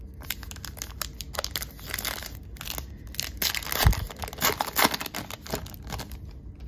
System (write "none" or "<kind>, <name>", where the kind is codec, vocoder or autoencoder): none